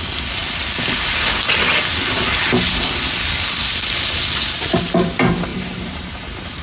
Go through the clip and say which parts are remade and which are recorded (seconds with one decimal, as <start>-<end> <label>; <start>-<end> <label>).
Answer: 0.0-5.5 recorded; 5.5-6.1 remade; 6.1-6.6 recorded

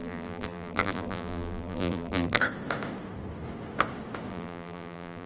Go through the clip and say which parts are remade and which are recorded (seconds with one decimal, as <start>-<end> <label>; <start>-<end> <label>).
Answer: 0.0-2.4 remade; 2.4-4.3 recorded; 4.3-5.3 remade

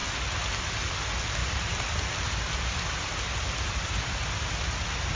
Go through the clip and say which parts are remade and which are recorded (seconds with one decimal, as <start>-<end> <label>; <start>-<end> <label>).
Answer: 0.0-0.6 recorded; 0.6-5.2 remade

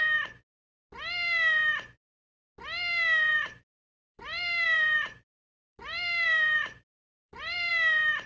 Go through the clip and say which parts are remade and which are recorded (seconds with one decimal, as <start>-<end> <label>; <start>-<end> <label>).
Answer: 0.0-3.3 recorded; 3.3-7.7 remade; 7.7-8.3 recorded

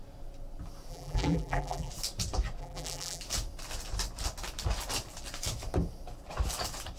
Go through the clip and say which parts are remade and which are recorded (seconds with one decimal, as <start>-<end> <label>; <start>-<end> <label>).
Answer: 0.0-0.9 recorded; 0.9-1.9 remade; 1.9-2.6 recorded; 2.6-3.2 remade; 3.2-7.0 recorded

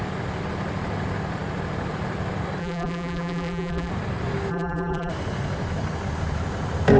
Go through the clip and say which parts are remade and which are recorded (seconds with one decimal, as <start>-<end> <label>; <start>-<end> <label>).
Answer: 0.0-2.6 recorded; 2.6-3.9 remade; 3.9-4.5 recorded; 4.5-5.1 remade; 5.1-7.0 recorded

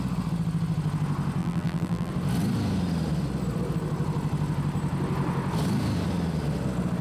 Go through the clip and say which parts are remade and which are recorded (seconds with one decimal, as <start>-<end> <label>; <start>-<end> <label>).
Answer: 0.0-1.4 recorded; 1.4-2.1 remade; 2.1-7.0 recorded

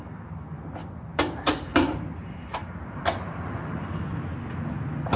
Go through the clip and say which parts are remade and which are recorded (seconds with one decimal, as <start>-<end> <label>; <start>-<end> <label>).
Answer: 0.0-0.8 recorded; 0.8-3.9 remade; 3.9-5.2 recorded